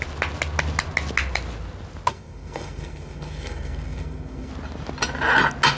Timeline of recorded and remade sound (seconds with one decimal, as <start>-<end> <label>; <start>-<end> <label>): 0.0-2.1 recorded; 2.1-4.5 remade; 4.5-5.8 recorded